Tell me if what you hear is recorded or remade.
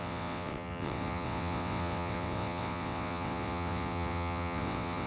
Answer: remade